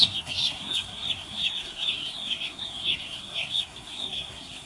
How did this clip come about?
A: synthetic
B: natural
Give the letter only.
A